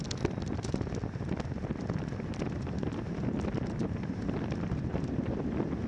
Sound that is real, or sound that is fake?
real